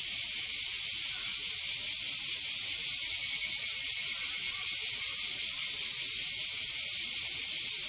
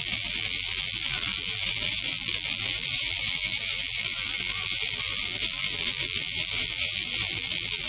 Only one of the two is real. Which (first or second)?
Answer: first